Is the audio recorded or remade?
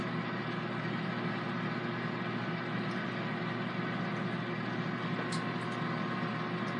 recorded